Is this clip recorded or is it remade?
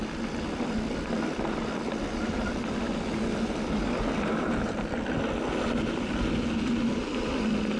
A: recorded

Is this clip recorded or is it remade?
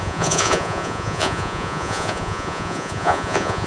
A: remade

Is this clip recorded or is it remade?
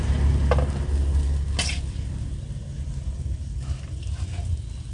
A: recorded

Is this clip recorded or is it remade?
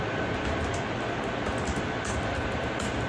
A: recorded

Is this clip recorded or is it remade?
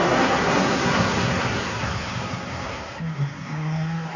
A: remade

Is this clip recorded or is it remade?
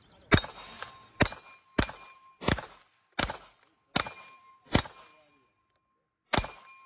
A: recorded